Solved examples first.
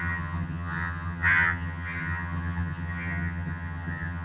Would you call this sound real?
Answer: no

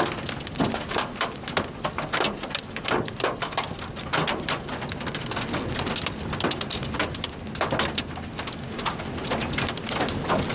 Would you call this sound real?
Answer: yes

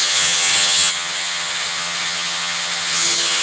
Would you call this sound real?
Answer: no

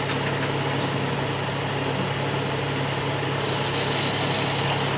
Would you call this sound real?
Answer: yes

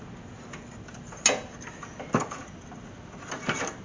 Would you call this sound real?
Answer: yes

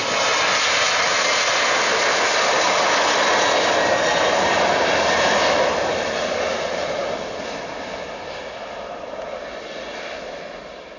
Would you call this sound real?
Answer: yes